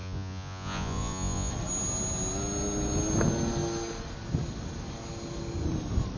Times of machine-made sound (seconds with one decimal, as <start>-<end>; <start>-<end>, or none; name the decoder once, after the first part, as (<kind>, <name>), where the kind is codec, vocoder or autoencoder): 0.0-1.5 (vocoder, Vocos)